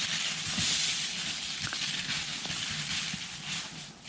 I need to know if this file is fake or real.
real